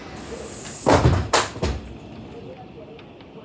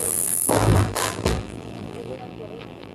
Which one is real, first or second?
first